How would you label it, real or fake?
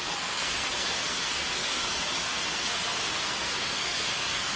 fake